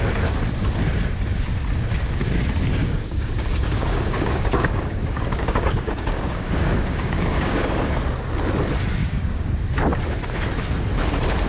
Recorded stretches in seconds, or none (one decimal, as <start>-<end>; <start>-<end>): 0.0-2.8; 7.9-9.0; 9.5-11.5